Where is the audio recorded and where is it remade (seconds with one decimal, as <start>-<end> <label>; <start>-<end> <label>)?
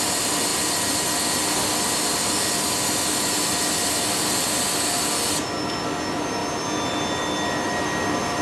0.0-8.4 recorded